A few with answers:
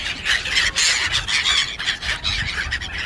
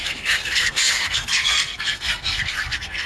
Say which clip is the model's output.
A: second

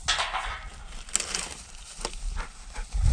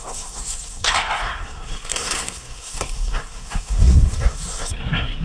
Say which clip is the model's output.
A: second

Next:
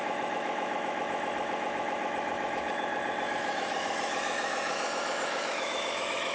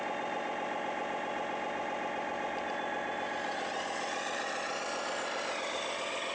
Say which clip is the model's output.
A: first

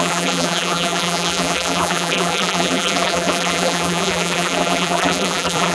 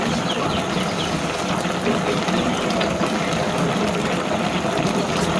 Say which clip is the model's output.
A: first